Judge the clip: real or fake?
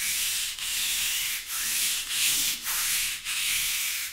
fake